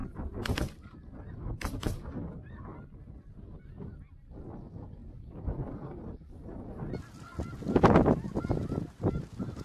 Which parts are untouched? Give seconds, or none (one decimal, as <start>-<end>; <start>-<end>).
0.0-9.6